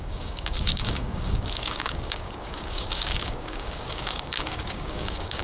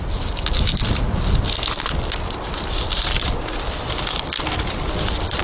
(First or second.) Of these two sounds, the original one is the second